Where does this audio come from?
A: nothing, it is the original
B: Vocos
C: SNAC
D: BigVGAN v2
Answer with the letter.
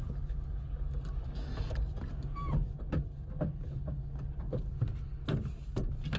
A